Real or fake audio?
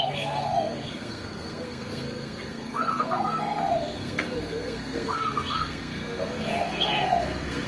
fake